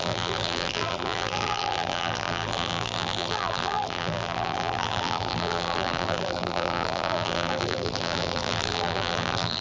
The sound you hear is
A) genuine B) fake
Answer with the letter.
B